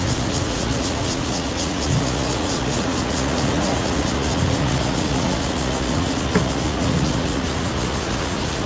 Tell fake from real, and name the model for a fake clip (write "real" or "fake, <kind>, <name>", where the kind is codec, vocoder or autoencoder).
fake, vocoder, Vocos